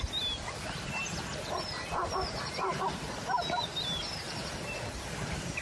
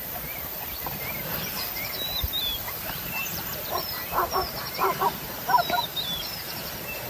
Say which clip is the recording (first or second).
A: first